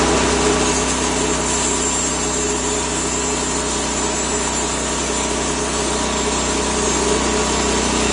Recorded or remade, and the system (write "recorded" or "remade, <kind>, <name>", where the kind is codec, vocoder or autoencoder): recorded